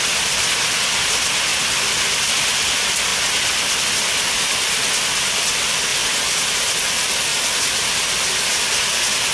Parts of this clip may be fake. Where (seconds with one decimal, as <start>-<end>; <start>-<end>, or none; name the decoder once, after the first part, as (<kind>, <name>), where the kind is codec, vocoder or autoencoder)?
1.5-2.6 (vocoder, BigVGAN v2); 5.9-6.5; 7.3-8.2